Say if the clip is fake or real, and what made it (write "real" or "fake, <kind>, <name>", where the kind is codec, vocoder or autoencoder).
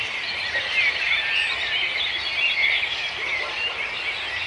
real